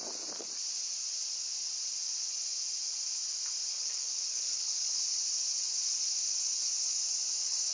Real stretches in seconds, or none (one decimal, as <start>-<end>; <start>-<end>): 0.0-3.7; 5.0-7.7

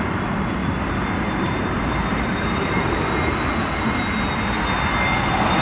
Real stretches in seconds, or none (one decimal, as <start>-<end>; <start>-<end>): 0.0-0.6; 4.0-5.6